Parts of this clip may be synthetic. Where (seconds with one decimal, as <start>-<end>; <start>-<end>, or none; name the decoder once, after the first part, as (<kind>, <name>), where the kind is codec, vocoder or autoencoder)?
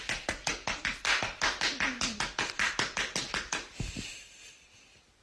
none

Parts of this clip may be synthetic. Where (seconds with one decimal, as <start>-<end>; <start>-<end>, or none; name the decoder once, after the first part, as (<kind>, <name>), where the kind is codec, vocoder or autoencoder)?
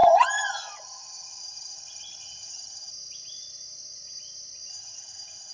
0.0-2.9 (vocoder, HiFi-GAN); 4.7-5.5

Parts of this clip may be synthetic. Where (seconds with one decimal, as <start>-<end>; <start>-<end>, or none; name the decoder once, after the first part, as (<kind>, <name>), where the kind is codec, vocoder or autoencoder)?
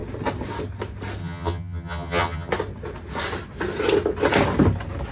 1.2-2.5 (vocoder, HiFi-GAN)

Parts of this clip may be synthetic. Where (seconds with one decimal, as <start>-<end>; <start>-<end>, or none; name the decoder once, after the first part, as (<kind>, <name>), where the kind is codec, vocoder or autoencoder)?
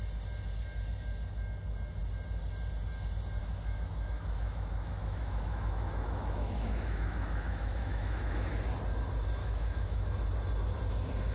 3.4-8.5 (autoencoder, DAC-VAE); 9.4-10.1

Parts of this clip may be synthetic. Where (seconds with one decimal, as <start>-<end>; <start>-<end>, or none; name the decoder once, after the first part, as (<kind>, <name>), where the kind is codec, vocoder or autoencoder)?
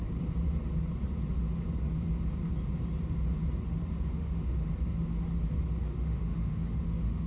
4.1-4.7 (autoencoder, DAC-VAE); 5.9-7.3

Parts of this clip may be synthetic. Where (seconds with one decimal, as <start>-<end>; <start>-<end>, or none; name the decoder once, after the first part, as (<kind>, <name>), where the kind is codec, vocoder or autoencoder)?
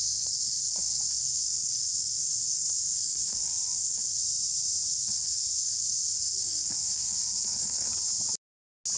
0.0-4.2 (codec, SNAC); 4.9-7.9